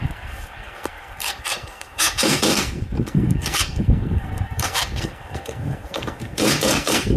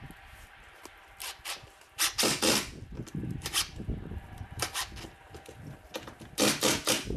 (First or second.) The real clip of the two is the second